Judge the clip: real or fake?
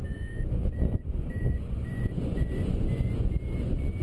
fake